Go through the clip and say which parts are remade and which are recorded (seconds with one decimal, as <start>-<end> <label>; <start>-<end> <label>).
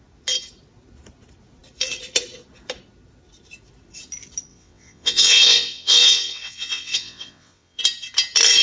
0.0-4.5 recorded; 4.5-7.8 remade; 7.8-8.6 recorded